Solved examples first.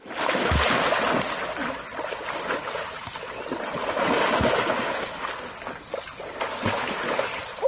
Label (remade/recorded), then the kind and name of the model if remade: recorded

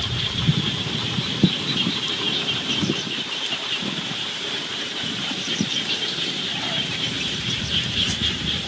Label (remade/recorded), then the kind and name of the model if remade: remade, vocoder, BigVGAN v2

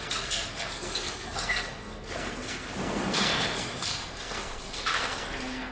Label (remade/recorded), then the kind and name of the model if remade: remade, codec, SNAC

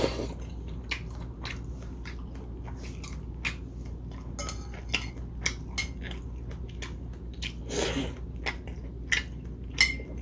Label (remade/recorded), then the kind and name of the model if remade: recorded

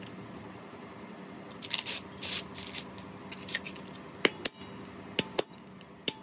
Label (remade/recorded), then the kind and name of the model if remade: recorded